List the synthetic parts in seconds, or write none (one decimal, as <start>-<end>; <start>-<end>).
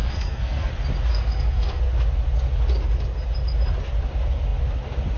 0.0-0.7; 1.1-1.8